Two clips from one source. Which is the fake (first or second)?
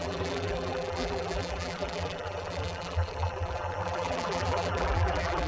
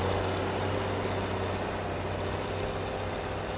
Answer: first